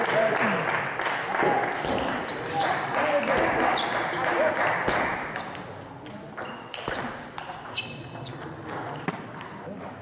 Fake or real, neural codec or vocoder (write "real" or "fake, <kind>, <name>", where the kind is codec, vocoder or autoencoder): real